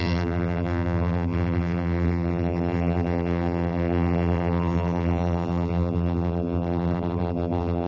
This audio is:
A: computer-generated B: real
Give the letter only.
A